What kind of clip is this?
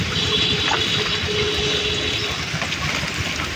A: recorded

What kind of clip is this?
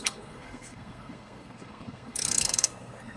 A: remade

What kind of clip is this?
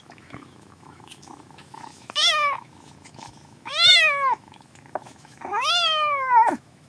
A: remade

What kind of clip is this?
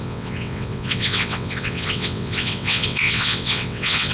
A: remade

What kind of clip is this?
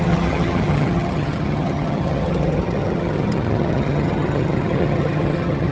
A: remade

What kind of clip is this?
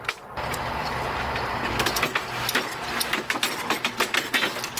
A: recorded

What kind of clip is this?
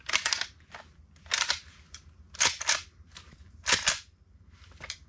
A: recorded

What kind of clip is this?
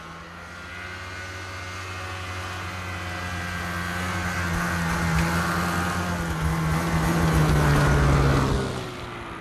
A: recorded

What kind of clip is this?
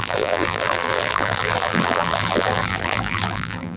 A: remade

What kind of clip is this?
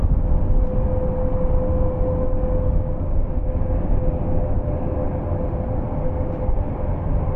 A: recorded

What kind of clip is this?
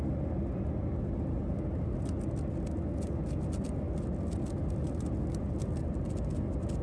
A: recorded